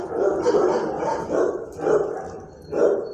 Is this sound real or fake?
real